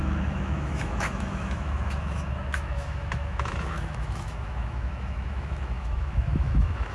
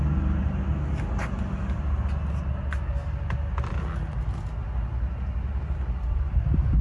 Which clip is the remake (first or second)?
first